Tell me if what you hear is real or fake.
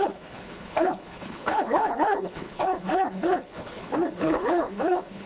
fake